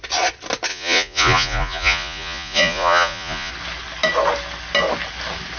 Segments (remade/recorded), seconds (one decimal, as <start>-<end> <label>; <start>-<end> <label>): 0.0-0.7 recorded; 0.7-3.5 remade; 3.5-5.6 recorded